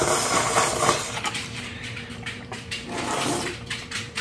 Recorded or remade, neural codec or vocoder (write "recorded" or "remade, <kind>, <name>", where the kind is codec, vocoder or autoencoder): remade, vocoder, BigVGAN v2